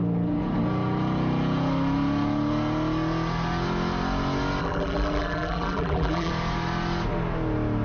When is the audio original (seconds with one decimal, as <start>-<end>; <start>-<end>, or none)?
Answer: 0.0-4.6; 6.3-7.8